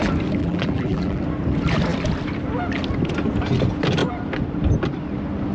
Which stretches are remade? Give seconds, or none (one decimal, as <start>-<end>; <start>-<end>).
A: 0.4-1.2